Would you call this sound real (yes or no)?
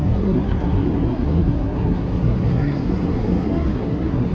no